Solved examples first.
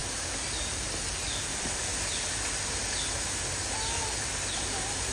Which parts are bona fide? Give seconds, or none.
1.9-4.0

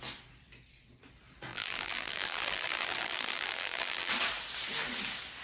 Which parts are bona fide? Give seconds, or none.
0.0-1.5; 4.1-5.4

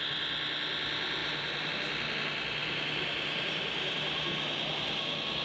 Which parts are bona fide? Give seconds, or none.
0.0-1.2; 1.7-2.6; 4.3-5.4

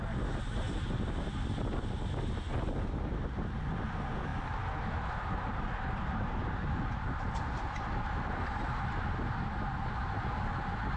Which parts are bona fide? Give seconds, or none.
0.0-11.0

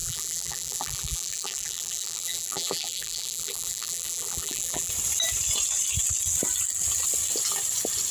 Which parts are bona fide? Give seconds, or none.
4.9-8.1

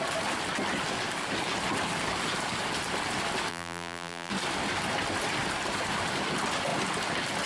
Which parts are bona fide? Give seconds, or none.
0.0-3.5; 4.3-7.5

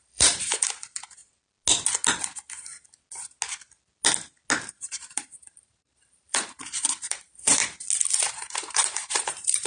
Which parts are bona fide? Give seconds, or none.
1.2-4.7; 7.6-8.3